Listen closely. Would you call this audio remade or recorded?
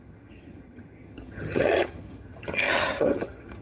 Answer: remade